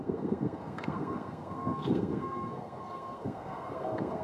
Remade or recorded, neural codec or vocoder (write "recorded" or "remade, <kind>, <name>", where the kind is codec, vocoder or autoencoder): remade, codec, SNAC